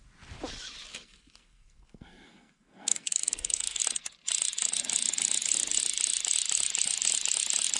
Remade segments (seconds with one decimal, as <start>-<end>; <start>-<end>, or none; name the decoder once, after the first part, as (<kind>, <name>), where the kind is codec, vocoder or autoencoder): 0.9-3.8 (codec, SNAC)